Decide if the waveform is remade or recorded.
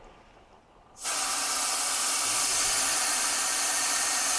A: recorded